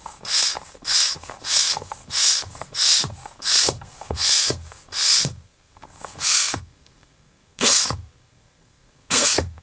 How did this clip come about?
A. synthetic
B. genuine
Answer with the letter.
A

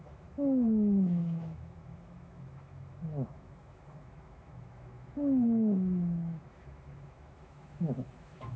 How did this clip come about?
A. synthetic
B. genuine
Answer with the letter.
A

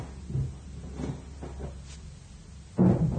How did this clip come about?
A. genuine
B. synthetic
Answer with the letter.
A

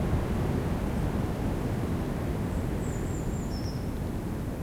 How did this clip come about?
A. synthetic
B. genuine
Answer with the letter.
B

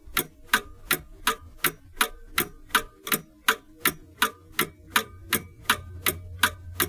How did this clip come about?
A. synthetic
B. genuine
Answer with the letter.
B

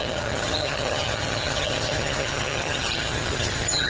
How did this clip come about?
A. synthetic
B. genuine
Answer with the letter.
A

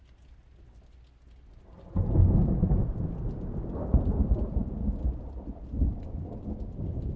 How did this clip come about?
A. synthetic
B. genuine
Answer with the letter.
B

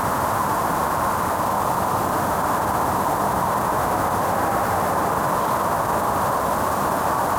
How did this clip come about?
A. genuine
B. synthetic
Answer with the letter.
A